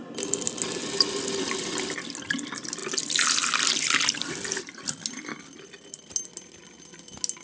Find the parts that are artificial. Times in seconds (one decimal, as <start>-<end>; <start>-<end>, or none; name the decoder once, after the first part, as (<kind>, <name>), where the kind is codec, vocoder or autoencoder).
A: none